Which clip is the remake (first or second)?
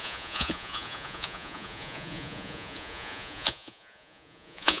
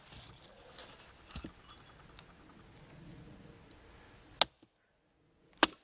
first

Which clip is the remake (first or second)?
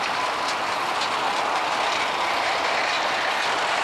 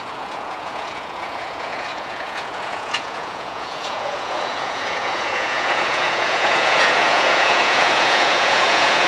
second